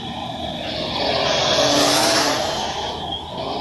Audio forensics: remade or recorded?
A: recorded